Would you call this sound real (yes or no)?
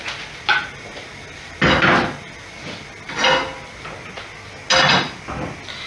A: yes